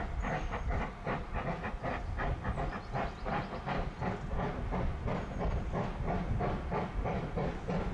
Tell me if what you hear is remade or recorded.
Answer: recorded